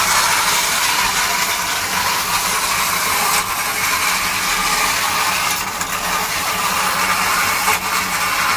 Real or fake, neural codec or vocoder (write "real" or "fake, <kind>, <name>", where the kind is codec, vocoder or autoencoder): real